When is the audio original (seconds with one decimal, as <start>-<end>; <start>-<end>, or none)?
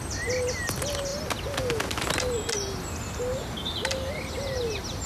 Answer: 0.0-5.1